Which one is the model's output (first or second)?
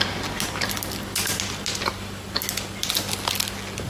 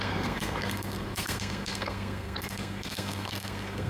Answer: second